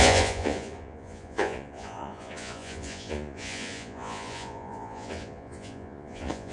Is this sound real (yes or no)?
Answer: no